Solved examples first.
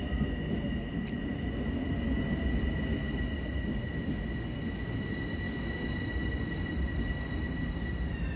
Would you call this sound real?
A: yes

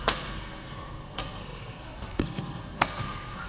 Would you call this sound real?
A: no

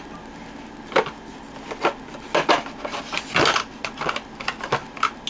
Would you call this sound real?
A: yes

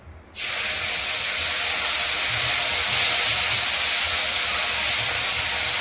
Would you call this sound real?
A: yes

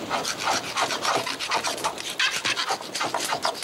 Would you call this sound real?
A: yes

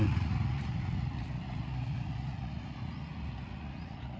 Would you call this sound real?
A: no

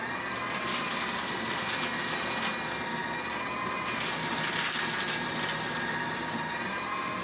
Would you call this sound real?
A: yes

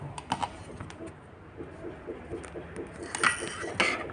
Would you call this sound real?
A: yes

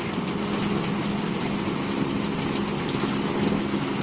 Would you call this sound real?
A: yes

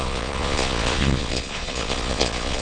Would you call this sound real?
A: no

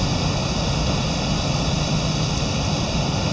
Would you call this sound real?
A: yes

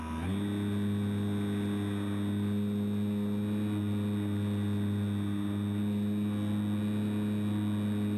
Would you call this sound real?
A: yes